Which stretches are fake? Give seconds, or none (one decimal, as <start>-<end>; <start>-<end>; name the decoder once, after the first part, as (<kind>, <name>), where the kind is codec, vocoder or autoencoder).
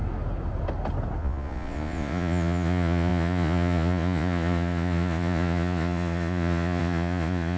1.2-7.6 (vocoder, Vocos)